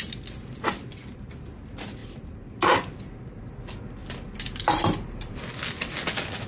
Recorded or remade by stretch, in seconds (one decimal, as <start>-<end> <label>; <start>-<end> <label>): 0.0-2.0 recorded; 2.0-3.2 remade; 3.2-6.5 recorded